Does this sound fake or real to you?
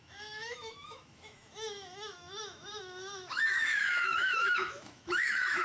fake